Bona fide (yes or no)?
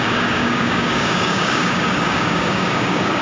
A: no